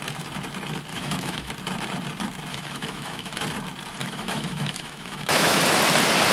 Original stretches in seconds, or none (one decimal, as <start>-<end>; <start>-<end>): 0.0-0.9; 1.5-2.5; 3.4-4.0; 5.6-6.3